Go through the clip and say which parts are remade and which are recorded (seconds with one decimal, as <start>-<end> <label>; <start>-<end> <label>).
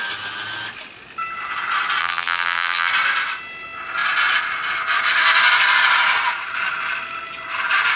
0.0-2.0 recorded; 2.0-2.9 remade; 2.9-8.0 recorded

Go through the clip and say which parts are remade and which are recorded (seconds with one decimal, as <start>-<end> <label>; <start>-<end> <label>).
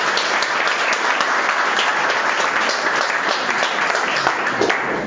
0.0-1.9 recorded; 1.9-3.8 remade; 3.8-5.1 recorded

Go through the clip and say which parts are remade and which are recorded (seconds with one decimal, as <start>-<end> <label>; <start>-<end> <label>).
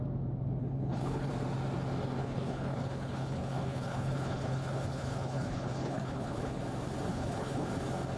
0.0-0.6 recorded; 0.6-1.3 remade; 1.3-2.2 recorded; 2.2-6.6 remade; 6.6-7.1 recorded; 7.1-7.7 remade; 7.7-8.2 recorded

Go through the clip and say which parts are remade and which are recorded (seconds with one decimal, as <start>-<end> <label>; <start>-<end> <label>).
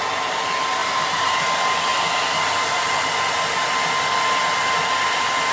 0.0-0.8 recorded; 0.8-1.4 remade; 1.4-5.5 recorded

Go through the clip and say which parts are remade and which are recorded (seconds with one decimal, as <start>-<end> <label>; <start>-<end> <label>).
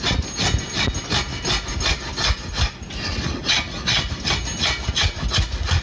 0.0-5.8 recorded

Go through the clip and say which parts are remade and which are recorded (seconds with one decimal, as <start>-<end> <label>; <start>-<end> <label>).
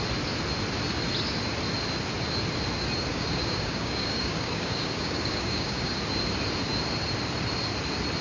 0.0-3.1 recorded; 3.1-5.9 remade; 5.9-8.2 recorded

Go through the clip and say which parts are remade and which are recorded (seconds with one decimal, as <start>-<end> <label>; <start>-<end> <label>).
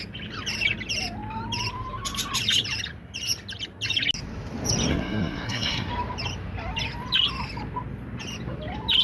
0.0-4.9 recorded; 4.9-5.9 remade; 5.9-9.0 recorded